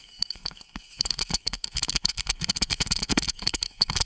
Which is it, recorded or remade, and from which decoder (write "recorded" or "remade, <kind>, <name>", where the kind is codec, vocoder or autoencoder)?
remade, codec, SNAC